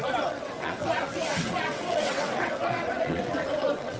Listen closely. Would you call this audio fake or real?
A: fake